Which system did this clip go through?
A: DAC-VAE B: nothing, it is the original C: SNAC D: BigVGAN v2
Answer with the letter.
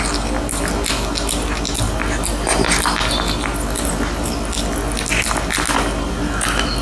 B